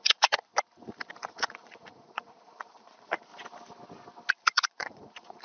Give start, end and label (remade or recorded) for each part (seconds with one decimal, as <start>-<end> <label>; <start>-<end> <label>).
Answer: 0.0-0.5 remade; 0.5-1.3 recorded; 1.3-3.3 remade; 3.3-4.3 recorded; 4.3-5.4 remade